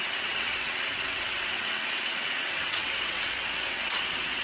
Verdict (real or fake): fake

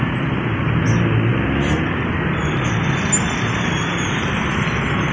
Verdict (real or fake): real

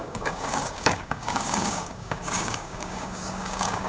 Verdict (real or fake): fake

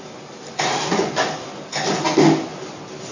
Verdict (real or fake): real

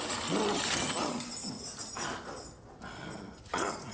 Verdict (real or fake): real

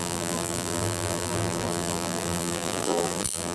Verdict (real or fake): fake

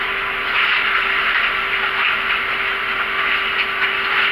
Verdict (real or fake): real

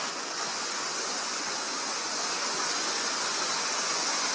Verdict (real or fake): fake